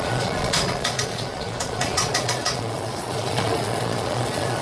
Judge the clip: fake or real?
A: fake